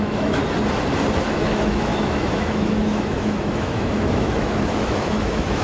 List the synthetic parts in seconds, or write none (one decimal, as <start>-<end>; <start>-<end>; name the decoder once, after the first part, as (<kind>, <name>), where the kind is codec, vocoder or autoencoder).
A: 0.0-0.4 (autoencoder, DAC-VAE); 1.3-5.6